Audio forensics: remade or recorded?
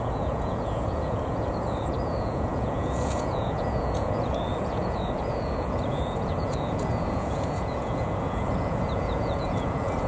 remade